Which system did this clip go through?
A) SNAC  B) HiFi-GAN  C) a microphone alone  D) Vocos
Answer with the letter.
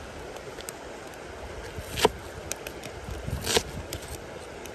C